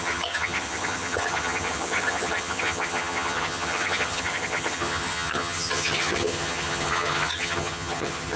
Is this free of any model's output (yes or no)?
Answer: no